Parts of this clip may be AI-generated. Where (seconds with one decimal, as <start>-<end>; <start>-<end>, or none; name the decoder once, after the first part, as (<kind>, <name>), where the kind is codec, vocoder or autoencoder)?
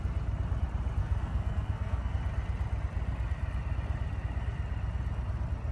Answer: 1.0-2.1 (codec, SNAC)